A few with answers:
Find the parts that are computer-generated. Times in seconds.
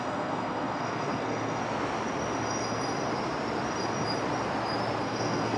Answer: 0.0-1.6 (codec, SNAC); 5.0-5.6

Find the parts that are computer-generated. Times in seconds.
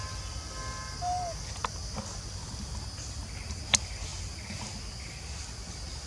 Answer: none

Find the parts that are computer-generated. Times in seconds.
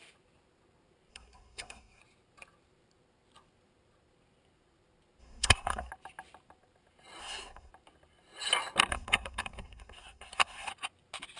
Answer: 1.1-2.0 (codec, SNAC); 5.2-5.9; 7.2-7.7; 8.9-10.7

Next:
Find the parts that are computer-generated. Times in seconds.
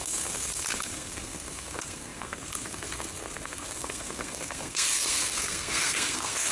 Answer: 0.0-6.5 (codec, SNAC)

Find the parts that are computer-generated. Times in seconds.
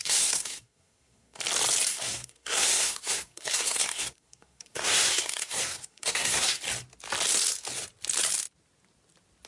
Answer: 0.0-1.4 (codec, SNAC); 1.9-6.6